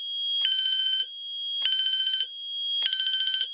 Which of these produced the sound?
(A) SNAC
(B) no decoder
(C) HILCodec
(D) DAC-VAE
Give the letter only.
D